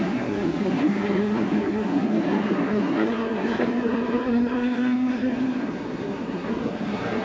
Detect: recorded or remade remade